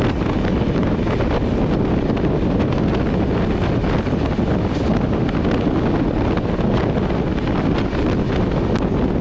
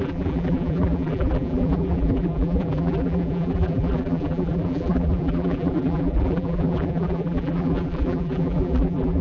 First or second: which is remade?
second